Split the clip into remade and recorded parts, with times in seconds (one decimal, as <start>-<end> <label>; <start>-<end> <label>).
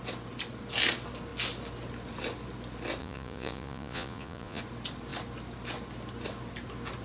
0.0-3.0 recorded; 3.0-4.6 remade; 4.6-7.0 recorded